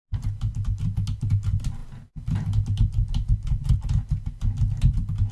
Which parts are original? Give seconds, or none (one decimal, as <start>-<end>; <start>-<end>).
0.0-5.3